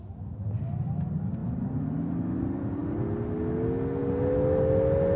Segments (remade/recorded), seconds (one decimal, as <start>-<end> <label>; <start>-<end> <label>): 0.0-5.2 recorded